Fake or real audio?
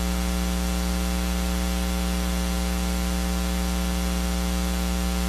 real